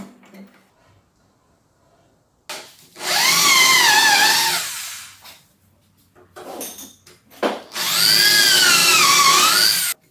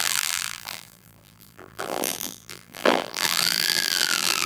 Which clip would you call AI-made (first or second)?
second